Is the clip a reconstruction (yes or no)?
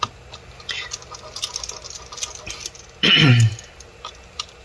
no